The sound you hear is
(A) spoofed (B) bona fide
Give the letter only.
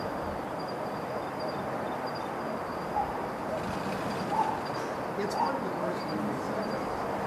B